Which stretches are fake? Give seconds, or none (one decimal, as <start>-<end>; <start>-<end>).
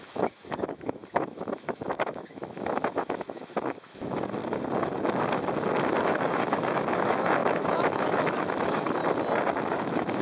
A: 0.0-4.4; 6.0-9.0; 9.6-10.2